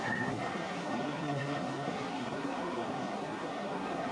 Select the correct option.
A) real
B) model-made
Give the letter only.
B